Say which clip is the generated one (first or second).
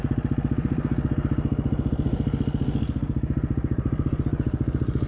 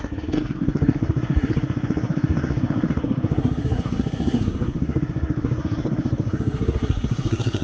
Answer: second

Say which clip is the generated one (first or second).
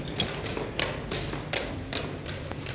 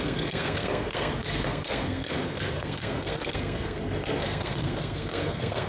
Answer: second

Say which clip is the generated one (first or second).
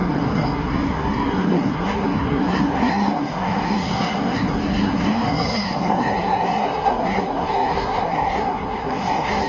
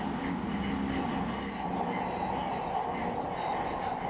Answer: first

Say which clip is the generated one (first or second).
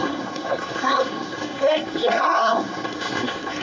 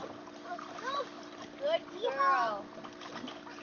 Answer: first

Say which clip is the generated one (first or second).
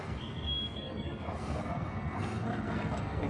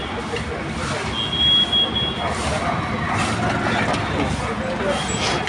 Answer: first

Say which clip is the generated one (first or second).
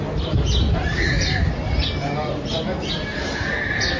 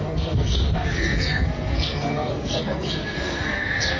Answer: second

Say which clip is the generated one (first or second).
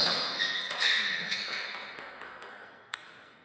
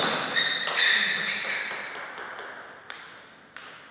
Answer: first